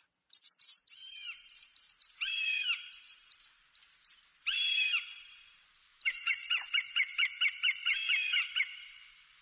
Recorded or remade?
remade